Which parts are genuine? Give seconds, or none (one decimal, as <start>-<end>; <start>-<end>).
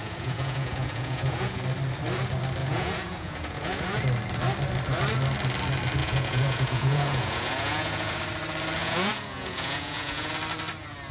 1.6-2.6; 4.0-6.0; 8.2-8.8; 10.3-11.1